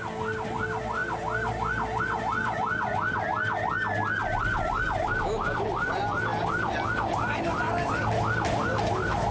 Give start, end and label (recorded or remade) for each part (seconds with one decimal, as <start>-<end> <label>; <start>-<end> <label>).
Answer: 0.0-9.3 recorded